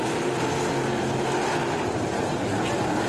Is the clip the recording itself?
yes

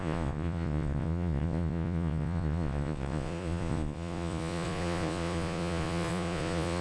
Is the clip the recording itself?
no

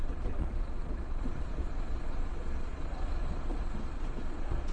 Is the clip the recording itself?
no